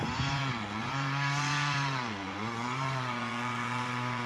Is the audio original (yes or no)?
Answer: no